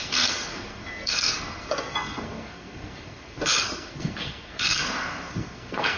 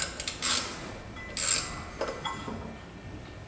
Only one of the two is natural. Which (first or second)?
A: second